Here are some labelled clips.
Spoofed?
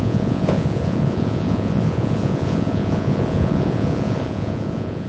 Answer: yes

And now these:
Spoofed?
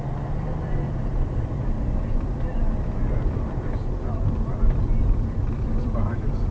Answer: yes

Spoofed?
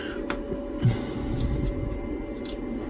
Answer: no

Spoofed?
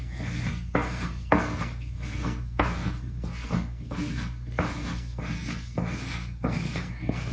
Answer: yes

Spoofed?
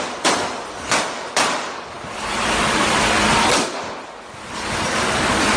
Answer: no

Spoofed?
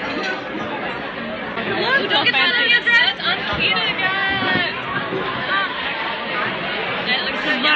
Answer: no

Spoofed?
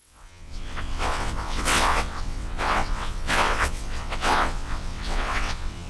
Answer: yes